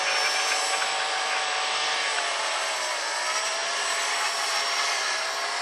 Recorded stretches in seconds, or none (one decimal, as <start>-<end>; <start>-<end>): none